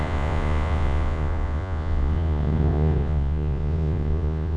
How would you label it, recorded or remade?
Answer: remade